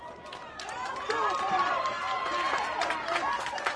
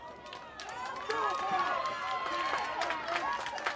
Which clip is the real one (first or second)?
second